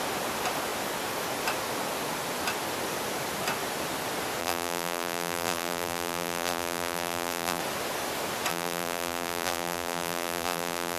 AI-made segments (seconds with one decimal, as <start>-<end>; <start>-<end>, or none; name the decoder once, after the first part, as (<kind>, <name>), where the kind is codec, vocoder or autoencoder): 4.4-7.6 (vocoder, BigVGAN v2); 8.5-11.0